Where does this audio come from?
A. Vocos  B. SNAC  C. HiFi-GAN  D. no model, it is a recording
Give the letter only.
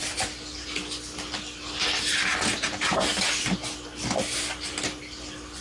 D